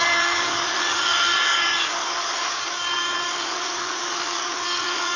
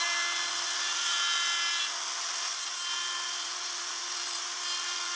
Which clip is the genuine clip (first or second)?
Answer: second